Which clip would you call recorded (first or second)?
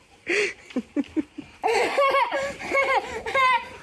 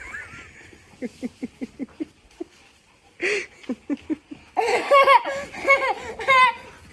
second